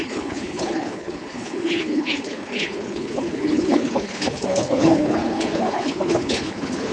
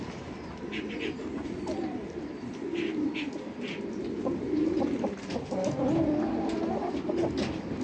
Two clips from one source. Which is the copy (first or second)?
first